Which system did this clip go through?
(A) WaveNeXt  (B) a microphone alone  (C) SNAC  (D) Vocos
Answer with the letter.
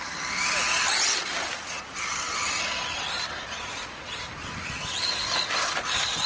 B